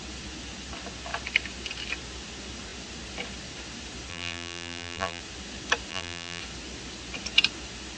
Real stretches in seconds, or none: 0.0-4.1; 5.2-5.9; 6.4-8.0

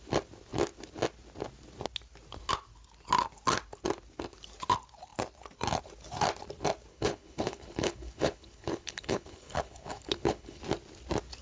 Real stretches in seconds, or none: 0.0-6.9; 10.6-11.4

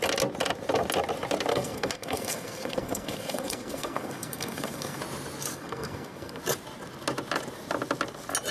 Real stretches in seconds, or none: 0.0-1.5; 5.0-5.5; 6.4-8.5

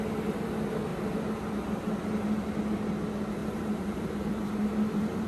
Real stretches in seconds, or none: 0.0-3.4

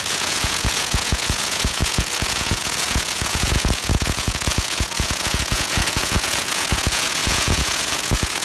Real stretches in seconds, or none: none